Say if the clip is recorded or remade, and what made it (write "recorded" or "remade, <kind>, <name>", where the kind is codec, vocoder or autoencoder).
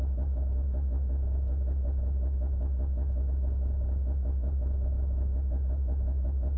recorded